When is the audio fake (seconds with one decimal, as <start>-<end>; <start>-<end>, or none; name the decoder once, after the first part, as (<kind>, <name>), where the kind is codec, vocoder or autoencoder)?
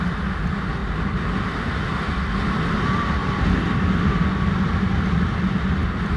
none